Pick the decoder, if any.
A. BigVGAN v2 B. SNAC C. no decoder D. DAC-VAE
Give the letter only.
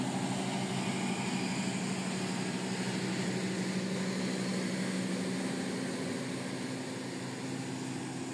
C